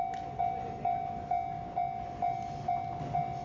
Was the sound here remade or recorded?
recorded